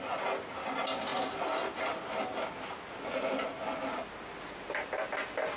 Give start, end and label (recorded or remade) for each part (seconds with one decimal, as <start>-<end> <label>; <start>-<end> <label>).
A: 0.0-5.6 recorded